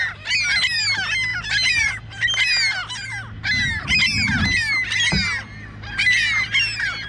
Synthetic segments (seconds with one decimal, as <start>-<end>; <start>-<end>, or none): 1.3-1.9